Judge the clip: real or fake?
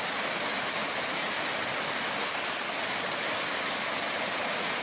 real